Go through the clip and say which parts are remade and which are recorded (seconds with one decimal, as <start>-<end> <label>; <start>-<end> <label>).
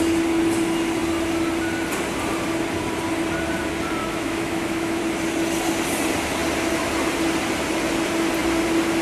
0.0-4.0 recorded; 4.0-5.0 remade; 5.0-9.0 recorded